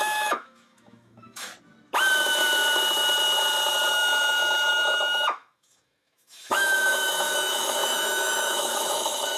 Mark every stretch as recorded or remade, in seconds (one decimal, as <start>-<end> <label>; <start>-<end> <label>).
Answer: 0.0-1.5 remade; 1.5-3.9 recorded; 3.9-9.4 remade